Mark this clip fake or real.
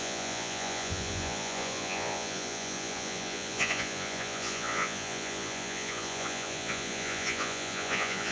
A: fake